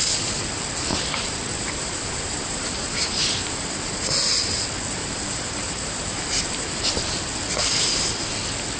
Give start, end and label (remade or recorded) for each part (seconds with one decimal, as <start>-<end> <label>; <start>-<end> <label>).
0.0-0.9 recorded; 0.9-4.4 remade; 4.4-5.0 recorded; 5.0-6.8 remade; 6.8-8.8 recorded